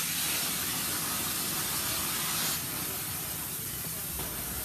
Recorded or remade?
remade